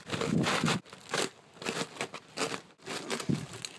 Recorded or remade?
recorded